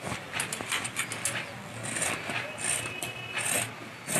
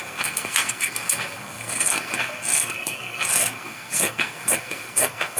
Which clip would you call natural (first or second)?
first